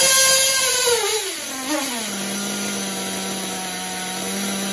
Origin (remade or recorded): recorded